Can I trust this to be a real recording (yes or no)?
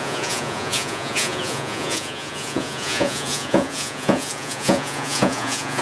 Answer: no